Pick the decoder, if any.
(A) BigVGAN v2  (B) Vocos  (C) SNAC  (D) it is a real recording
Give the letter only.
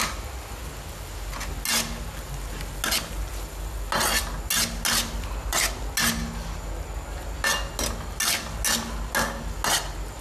D